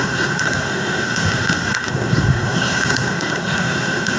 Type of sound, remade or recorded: remade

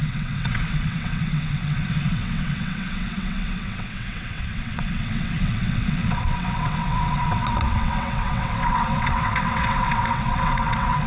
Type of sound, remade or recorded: remade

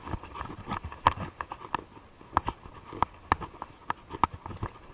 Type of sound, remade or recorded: recorded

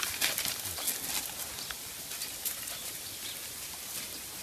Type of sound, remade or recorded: recorded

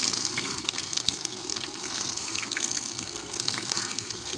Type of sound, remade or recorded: remade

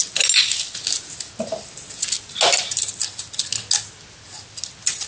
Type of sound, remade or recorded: recorded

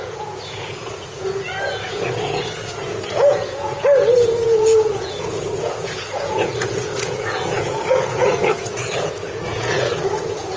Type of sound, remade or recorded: remade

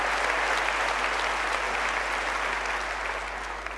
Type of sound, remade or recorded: recorded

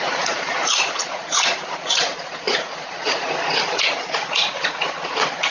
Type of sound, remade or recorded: remade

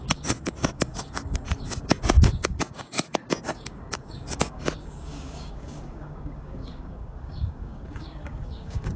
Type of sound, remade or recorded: remade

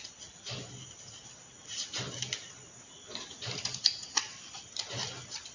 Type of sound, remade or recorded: recorded